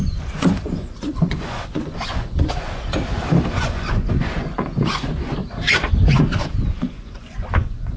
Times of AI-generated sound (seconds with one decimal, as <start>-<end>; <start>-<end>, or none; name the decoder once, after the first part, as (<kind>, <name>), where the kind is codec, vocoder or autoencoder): 0.0-2.9 (vocoder, Vocos); 3.5-8.0

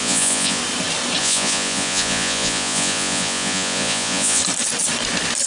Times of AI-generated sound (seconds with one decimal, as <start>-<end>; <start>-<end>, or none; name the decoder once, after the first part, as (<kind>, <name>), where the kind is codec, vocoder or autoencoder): 0.0-0.6 (vocoder, Vocos); 1.2-4.4

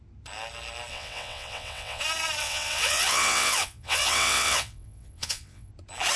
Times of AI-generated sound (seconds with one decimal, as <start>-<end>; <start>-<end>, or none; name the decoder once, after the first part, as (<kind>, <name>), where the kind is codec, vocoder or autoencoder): 0.9-2.0 (vocoder, WaveNeXt); 2.4-5.7

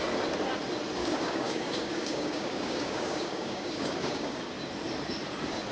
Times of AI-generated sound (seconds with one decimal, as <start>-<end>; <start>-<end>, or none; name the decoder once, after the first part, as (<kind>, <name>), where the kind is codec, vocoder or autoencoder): 1.0-4.4 (codec, DAC)

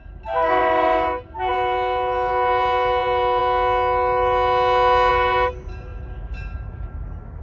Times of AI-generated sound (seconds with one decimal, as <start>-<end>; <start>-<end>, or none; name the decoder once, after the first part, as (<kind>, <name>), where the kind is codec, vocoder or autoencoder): 0.0-3.4 (vocoder, BigVGAN v2); 5.1-5.9

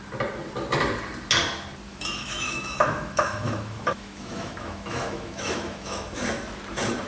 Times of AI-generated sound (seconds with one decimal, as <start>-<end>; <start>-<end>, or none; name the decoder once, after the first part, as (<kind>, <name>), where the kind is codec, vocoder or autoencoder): 1.9-6.2 (autoencoder, DAC-VAE)

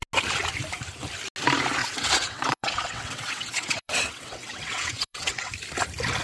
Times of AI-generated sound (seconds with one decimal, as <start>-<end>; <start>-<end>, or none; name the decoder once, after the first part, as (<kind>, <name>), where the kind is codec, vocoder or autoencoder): 1.8-5.5 (vocoder, WaveNeXt)

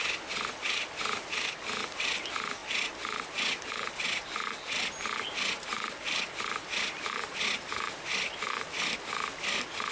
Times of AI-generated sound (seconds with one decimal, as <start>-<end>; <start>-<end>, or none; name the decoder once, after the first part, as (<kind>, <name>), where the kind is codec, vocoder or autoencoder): none